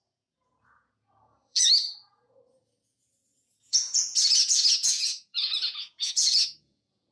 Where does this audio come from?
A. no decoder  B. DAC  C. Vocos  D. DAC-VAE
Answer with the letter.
C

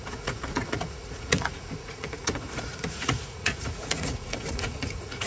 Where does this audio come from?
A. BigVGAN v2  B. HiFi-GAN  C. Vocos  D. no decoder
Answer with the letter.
C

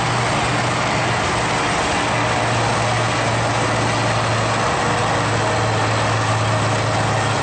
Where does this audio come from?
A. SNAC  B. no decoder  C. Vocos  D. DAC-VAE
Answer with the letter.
B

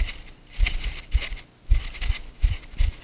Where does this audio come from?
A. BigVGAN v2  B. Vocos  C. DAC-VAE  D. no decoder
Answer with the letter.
D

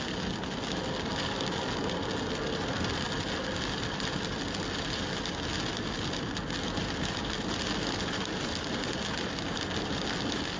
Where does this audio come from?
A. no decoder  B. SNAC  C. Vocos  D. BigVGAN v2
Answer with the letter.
A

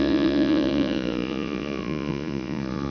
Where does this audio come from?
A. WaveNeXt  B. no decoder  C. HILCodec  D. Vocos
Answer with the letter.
D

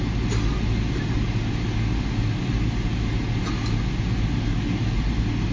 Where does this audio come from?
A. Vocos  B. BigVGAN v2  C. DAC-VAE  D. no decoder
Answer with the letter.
D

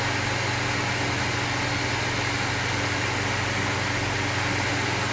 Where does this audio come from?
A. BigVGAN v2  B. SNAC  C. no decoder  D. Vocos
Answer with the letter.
C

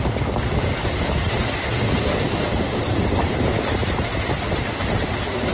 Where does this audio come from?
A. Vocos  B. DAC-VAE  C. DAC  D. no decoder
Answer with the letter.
D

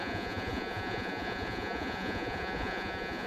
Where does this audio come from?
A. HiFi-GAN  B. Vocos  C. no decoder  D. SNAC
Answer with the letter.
B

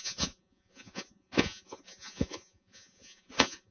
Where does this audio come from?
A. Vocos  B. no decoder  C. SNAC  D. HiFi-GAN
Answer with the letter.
A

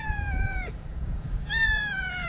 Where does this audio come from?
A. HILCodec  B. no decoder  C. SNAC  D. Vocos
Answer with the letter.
D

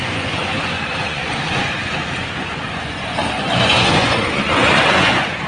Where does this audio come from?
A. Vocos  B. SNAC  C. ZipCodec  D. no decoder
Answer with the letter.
A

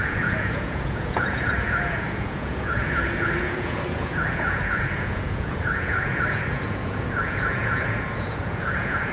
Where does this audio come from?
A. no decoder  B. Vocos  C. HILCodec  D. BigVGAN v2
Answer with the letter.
B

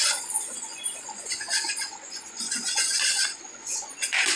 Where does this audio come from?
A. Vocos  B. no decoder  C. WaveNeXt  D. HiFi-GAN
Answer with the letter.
A